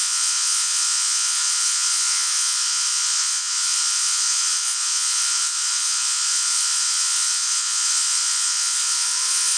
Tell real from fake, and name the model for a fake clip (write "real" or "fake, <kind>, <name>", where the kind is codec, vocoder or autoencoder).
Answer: fake, vocoder, Vocos